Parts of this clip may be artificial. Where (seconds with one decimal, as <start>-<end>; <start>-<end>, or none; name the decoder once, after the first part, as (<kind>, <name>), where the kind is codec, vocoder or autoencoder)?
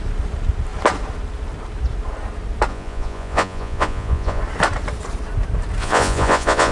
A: 2.7-4.4 (vocoder, Vocos); 5.8-6.7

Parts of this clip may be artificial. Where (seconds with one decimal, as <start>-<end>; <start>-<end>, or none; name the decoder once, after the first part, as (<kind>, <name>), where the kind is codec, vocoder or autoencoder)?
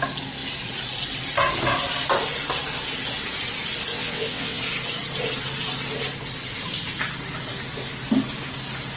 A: 3.9-4.6 (vocoder, WaveNeXt)